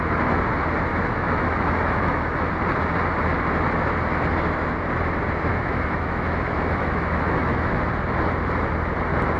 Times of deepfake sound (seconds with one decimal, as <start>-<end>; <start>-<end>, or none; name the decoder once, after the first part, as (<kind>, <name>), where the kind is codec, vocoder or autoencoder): 0.9-2.5 (autoencoder, DAC-VAE); 5.5-7.9